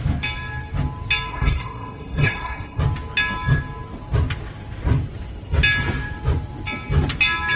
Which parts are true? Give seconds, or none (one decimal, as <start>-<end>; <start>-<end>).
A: 0.0-1.3; 2.8-7.6